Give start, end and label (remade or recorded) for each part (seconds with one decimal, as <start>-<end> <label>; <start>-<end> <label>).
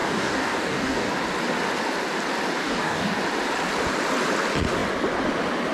0.0-1.1 remade; 1.1-2.6 recorded; 2.6-3.2 remade; 3.2-5.7 recorded